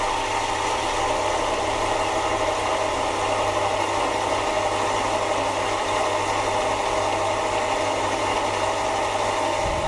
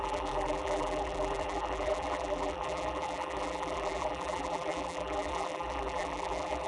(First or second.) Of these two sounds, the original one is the first